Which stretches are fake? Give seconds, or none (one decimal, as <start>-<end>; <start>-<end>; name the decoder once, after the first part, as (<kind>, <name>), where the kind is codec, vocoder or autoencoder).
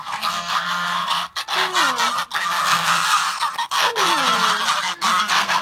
0.0-1.7 (codec, SNAC); 2.3-4.1; 4.8-5.6